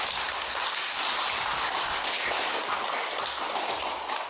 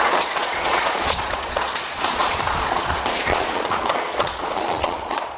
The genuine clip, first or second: first